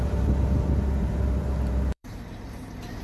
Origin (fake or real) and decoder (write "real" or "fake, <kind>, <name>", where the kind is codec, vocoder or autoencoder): fake, vocoder, BigVGAN v2